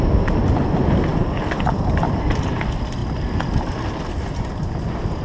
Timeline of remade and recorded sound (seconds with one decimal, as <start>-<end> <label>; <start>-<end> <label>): 0.0-5.2 recorded